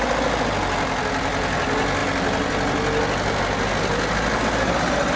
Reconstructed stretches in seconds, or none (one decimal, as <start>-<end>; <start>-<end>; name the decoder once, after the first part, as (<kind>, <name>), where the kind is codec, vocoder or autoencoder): none